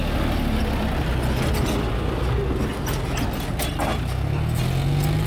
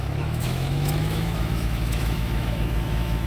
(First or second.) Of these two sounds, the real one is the first